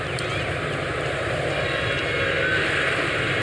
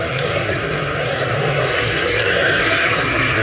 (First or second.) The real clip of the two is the first